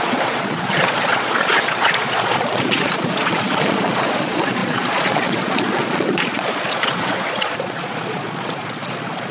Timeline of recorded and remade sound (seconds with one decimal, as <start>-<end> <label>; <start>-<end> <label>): 0.0-9.3 remade